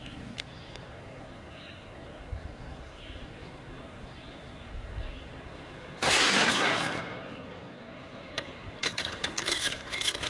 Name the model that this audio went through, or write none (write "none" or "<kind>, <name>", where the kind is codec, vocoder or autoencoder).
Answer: codec, SNAC